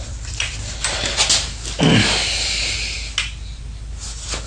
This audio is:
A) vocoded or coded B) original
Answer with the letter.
B